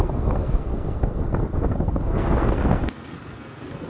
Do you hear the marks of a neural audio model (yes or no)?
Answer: yes